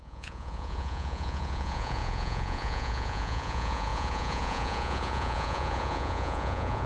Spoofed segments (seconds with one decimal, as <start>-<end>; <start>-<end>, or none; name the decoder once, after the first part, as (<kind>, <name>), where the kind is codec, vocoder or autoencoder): 0.0-6.9 (vocoder, Vocos)